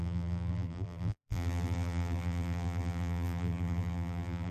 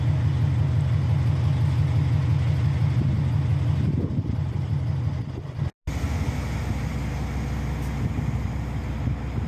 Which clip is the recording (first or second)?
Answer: second